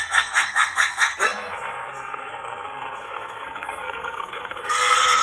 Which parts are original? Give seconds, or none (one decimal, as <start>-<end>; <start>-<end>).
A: none